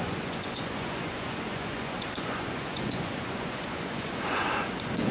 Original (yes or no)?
no